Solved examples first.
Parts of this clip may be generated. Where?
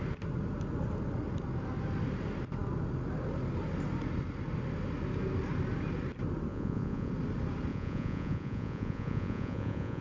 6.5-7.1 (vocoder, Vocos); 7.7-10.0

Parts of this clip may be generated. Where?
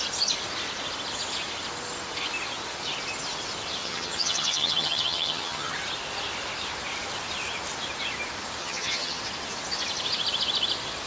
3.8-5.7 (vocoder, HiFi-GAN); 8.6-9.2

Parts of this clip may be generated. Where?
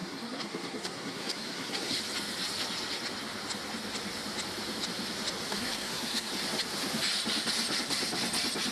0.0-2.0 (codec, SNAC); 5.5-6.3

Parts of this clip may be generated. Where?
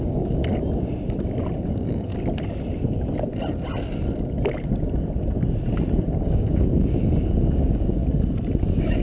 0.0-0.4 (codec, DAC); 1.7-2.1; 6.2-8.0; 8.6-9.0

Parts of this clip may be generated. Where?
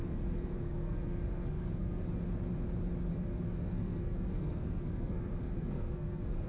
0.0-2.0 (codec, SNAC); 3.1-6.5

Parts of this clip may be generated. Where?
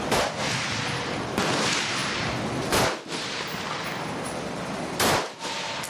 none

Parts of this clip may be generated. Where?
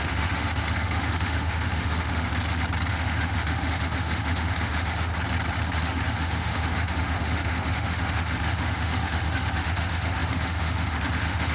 0.0-2.3 (autoencoder, DAC-VAE); 2.9-5.1; 5.8-11.5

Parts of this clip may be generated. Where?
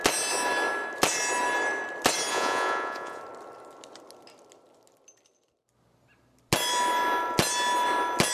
2.3-3.2 (vocoder, Vocos)